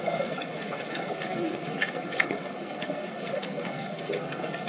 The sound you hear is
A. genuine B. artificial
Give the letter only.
B